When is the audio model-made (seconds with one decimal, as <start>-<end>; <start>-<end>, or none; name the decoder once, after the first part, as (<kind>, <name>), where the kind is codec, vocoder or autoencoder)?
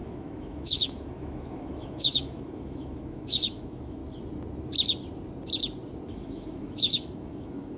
0.0-4.0 (autoencoder, DAC-VAE); 6.1-7.8